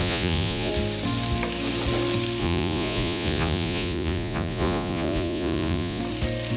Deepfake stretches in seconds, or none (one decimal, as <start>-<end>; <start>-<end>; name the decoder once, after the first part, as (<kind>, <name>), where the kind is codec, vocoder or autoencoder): 0.0-0.7 (vocoder, Vocos); 2.4-6.0